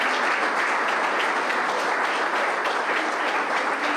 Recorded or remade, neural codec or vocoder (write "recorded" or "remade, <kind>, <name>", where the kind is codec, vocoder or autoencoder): recorded